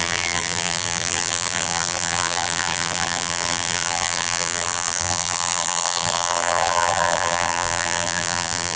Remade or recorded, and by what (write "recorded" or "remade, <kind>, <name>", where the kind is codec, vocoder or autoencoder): remade, vocoder, BigVGAN v2